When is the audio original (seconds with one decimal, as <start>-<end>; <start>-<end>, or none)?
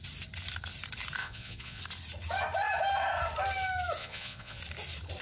0.0-1.2; 1.8-4.0; 4.6-5.2